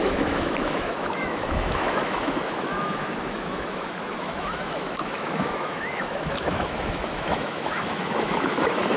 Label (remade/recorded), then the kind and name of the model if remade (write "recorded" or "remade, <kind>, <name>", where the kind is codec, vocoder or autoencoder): remade, autoencoder, DAC-VAE